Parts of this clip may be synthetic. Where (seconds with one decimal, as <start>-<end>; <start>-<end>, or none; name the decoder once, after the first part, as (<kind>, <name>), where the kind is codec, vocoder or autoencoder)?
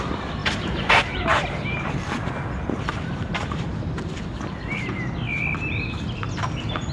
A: 0.4-3.8 (vocoder, BigVGAN v2)